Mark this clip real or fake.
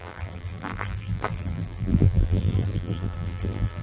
fake